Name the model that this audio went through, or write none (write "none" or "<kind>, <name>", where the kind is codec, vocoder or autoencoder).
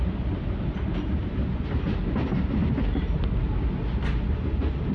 none